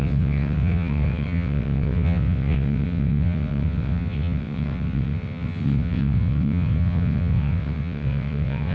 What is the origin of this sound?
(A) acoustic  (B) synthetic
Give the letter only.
B